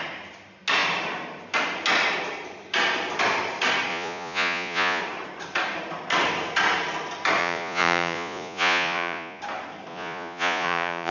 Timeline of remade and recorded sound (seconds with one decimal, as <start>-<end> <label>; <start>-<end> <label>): 0.0-3.9 recorded; 3.9-5.0 remade; 5.0-7.4 recorded; 7.4-9.4 remade; 9.4-9.9 recorded; 9.9-11.1 remade